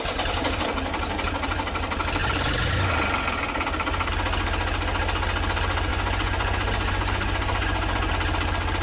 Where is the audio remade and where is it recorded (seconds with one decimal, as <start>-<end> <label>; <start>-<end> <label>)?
0.0-2.2 recorded; 2.2-2.9 remade; 2.9-5.9 recorded; 5.9-8.1 remade; 8.1-8.8 recorded